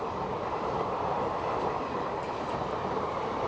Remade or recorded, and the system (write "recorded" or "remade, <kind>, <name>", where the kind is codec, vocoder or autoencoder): recorded